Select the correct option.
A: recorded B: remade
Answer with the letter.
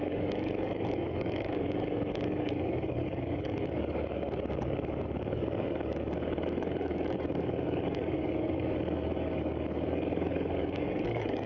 B